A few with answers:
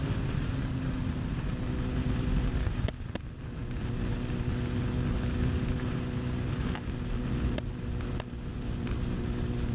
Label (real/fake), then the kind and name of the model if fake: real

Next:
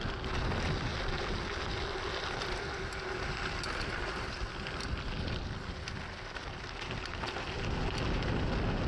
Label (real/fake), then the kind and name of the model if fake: real